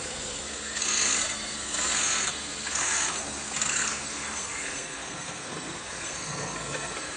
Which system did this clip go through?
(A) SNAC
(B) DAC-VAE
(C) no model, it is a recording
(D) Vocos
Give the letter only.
A